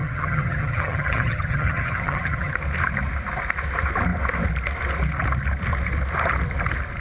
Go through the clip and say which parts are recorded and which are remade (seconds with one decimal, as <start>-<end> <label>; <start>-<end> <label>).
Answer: 0.0-2.5 remade; 2.5-7.0 recorded